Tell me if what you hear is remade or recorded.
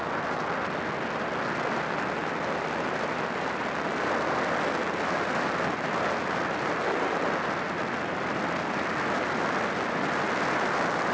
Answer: recorded